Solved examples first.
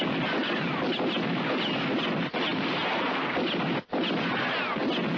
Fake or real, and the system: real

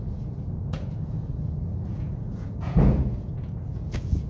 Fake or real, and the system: fake, vocoder, Vocos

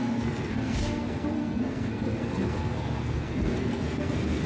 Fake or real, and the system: fake, codec, SNAC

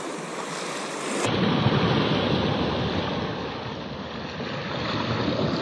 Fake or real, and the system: real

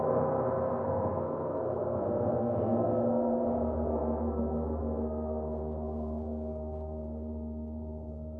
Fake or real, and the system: fake, codec, SNAC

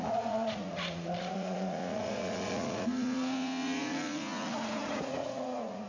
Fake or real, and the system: fake, vocoder, Vocos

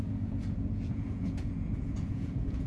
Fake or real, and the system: fake, vocoder, Vocos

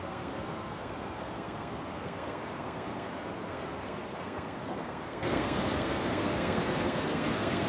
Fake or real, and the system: fake, codec, SNAC